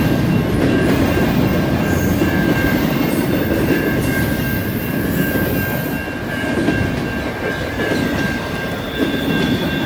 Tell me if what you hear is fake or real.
real